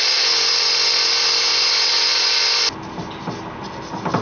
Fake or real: real